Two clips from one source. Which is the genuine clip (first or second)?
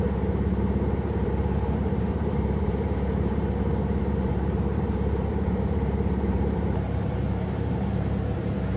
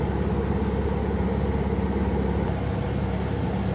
second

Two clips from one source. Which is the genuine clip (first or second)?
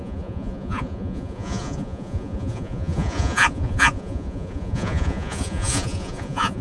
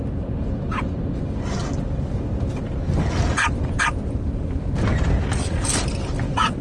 second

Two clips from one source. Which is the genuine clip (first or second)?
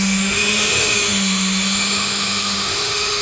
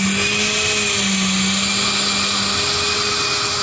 second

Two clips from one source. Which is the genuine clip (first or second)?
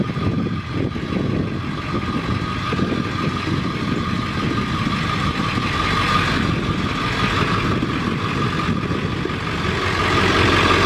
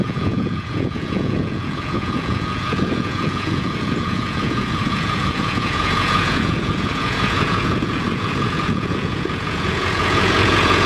first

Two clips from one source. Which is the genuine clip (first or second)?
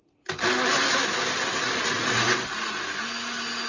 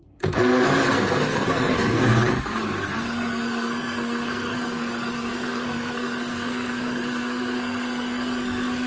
first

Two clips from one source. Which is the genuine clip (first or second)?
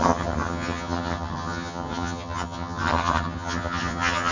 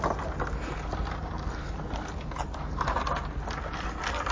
second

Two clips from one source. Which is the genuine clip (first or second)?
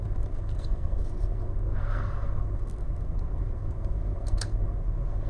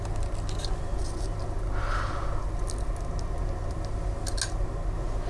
second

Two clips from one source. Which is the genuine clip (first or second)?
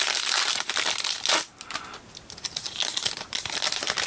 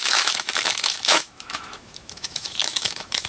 first